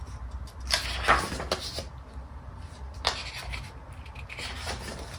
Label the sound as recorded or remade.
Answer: recorded